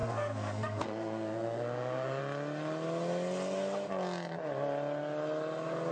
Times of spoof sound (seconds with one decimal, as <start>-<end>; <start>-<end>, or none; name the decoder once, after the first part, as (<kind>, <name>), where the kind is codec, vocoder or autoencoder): 0.0-2.2 (codec, SNAC)